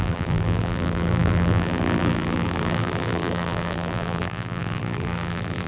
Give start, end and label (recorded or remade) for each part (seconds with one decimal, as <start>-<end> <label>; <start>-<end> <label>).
0.0-5.7 remade